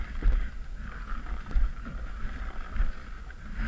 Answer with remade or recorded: recorded